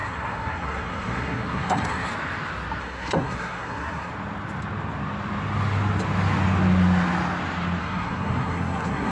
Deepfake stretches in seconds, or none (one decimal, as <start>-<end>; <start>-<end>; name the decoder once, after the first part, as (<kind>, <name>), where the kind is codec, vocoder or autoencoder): 0.0-2.1 (codec, SNAC); 2.8-4.1; 7.8-9.1